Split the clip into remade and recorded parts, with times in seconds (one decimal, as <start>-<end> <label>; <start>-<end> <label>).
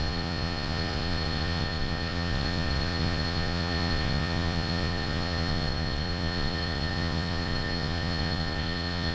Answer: 0.0-9.1 remade